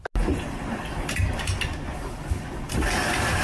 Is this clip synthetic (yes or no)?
no